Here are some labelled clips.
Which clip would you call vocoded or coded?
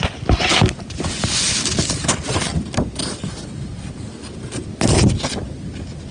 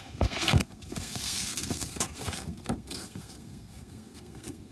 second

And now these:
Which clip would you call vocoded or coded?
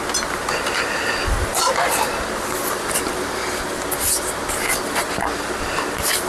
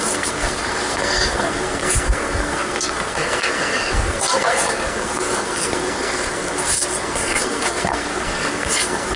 second